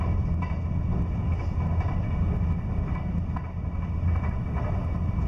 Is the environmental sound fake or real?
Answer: real